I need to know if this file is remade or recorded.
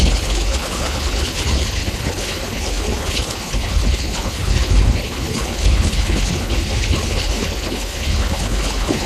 remade